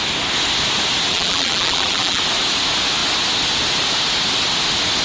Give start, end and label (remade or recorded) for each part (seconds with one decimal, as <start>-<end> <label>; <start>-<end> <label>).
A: 0.0-1.1 recorded; 1.1-2.2 remade; 2.2-5.0 recorded